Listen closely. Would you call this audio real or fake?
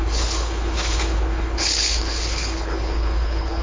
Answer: fake